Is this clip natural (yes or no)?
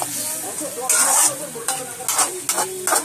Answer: yes